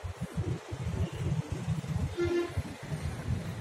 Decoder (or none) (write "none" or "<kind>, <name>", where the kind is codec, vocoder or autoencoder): none